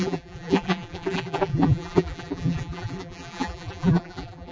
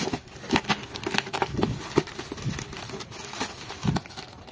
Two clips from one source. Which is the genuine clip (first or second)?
second